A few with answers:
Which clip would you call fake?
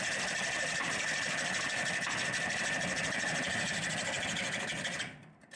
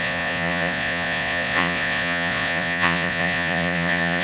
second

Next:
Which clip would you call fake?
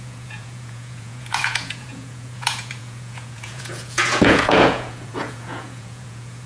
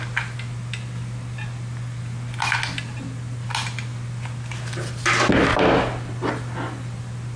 first